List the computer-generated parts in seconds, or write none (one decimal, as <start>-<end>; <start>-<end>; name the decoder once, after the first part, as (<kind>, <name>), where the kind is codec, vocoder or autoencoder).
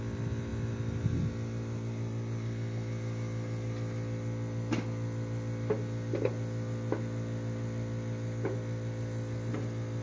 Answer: none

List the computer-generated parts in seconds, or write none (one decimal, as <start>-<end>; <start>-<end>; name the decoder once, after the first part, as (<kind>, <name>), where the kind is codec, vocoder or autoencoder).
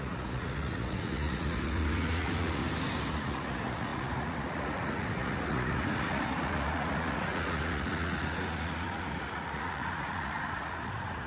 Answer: 0.0-2.6 (vocoder, Vocos); 3.1-11.3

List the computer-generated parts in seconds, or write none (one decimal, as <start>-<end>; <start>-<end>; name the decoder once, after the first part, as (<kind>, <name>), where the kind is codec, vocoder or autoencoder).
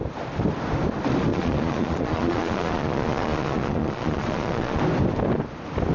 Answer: 1.3-4.8 (vocoder, Vocos)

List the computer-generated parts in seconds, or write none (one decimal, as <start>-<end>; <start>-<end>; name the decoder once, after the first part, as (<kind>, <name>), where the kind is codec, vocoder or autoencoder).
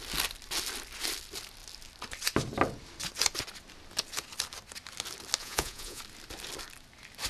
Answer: 5.4-6.0 (vocoder, Vocos)